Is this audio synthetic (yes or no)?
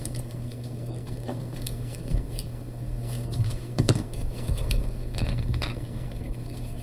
yes